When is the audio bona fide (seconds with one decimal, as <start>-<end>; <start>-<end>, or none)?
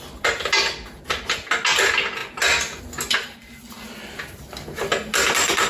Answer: 0.0-5.7